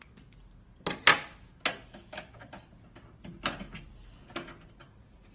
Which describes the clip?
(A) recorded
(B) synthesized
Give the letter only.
A